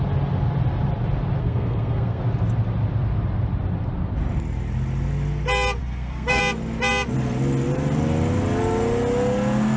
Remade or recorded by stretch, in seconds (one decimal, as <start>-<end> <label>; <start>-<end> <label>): 0.0-1.4 recorded; 1.4-2.2 remade; 2.2-5.8 recorded; 5.8-6.4 remade; 6.4-9.8 recorded